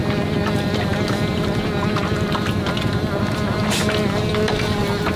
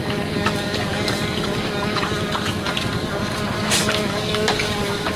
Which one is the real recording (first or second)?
first